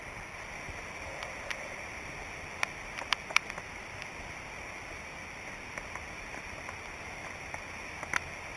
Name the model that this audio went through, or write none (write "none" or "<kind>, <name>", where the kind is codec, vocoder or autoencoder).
none